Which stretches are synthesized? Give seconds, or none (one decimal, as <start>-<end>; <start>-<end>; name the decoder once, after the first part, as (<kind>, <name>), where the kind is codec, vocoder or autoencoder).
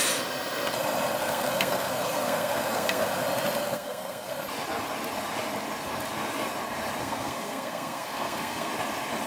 1.2-3.1 (codec, SNAC); 3.6-4.3; 7.0-8.7